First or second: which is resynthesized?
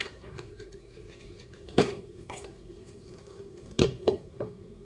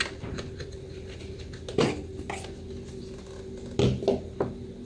first